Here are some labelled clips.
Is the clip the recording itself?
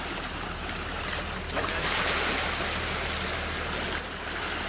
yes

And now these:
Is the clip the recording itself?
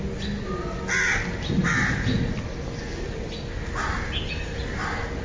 yes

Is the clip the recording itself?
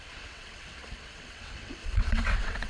no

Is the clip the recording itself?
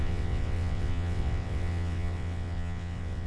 no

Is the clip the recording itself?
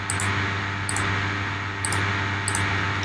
yes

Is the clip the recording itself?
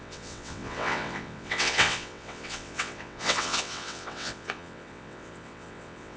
no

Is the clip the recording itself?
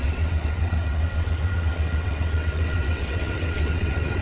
no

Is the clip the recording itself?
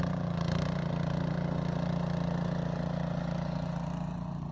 yes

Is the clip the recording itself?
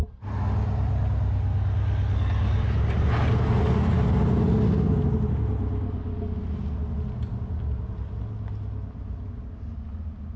yes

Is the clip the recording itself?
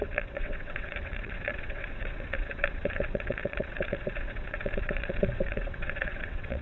no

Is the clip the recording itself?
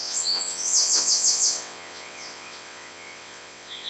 no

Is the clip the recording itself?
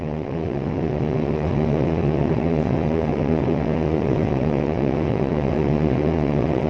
no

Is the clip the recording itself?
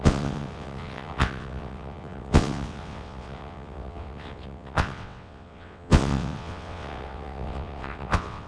no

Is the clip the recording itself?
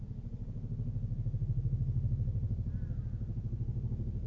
yes